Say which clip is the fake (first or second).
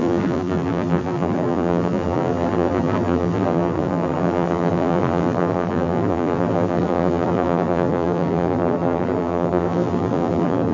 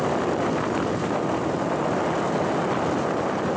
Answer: first